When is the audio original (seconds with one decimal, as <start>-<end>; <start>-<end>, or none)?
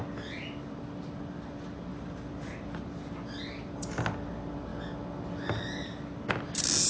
0.0-6.9